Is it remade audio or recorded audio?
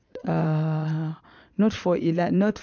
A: remade